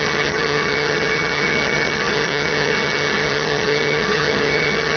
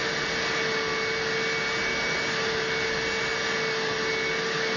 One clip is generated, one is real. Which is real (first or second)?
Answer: second